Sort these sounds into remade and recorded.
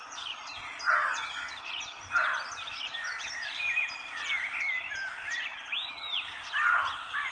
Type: recorded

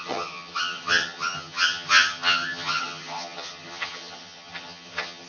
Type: remade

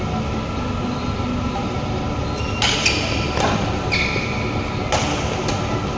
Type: recorded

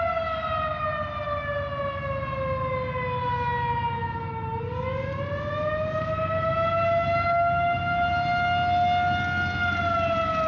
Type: recorded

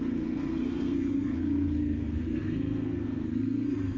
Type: remade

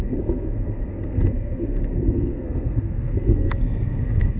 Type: remade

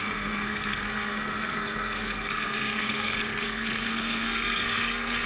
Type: remade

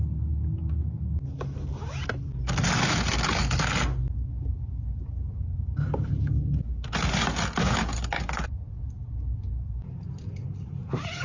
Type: recorded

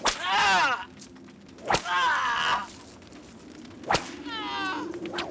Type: recorded